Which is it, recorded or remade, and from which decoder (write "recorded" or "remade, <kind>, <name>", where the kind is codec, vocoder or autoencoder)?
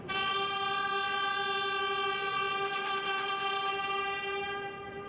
recorded